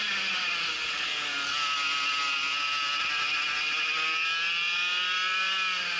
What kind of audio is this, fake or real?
real